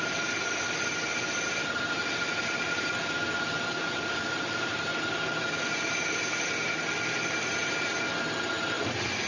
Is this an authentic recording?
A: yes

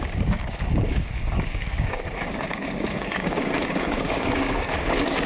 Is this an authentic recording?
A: no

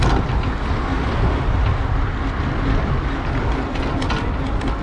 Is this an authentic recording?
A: yes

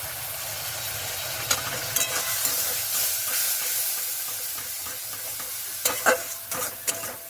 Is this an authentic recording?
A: yes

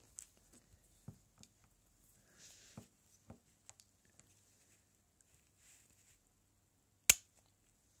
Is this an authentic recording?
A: yes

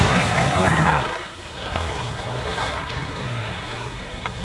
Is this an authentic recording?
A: no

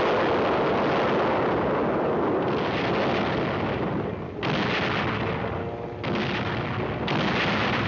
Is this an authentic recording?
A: yes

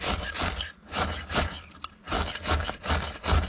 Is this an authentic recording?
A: yes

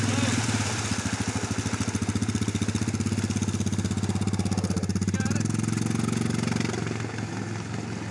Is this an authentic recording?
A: yes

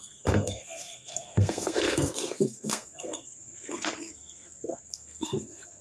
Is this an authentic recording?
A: no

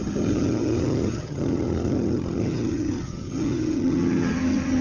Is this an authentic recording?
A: no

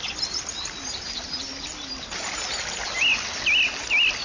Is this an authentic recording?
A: yes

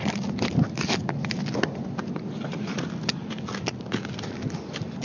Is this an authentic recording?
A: yes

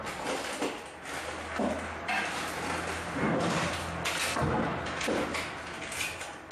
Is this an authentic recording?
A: yes